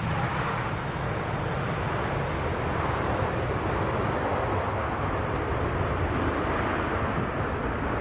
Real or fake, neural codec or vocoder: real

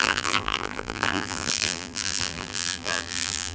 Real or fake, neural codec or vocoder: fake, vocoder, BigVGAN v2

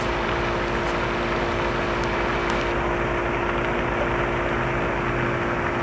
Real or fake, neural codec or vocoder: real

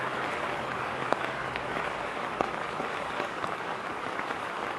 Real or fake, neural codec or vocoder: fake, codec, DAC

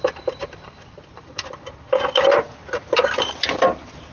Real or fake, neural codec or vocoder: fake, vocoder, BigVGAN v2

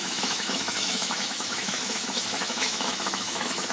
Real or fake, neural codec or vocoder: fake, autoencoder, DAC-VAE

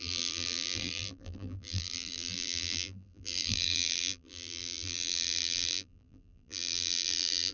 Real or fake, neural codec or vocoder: fake, vocoder, BigVGAN v2